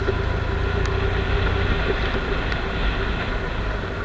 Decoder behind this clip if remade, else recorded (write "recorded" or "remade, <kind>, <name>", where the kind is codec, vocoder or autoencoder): recorded